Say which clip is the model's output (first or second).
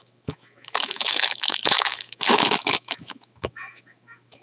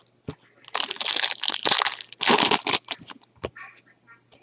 first